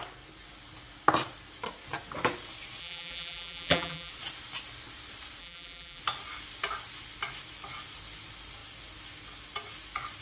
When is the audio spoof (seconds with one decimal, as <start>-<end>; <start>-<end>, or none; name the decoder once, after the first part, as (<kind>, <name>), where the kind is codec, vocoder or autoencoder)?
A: 2.8-4.1 (vocoder, BigVGAN v2); 5.4-6.0